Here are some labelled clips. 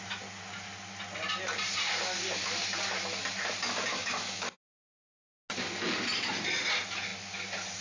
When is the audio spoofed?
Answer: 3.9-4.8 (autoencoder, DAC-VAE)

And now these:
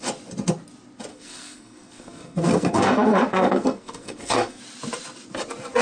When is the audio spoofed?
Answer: 1.1-4.6 (codec, SNAC)

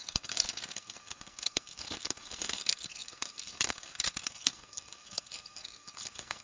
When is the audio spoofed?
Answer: 0.0-6.4 (codec, SNAC)

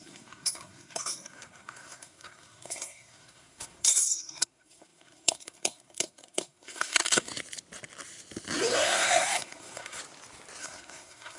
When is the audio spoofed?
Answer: 0.0-7.3 (codec, SNAC); 8.6-10.0; 10.6-11.4

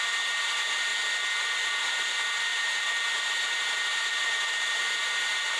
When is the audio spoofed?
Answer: 0.0-0.9 (vocoder, BigVGAN v2); 1.4-5.6

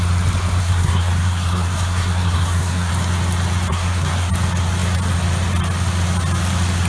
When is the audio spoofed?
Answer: 0.6-2.9 (codec, SNAC); 3.7-4.3

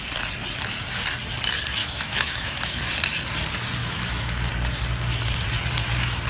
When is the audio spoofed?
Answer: 1.8-2.8 (autoencoder, DAC-VAE); 3.8-4.5